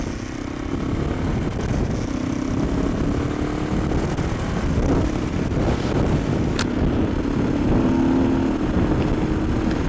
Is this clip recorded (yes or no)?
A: yes